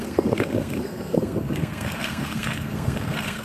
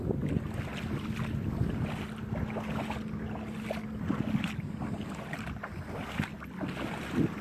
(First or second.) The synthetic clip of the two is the first